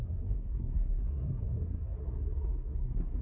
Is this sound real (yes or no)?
no